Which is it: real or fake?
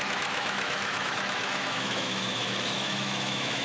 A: fake